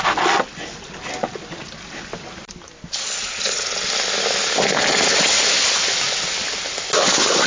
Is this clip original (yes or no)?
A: yes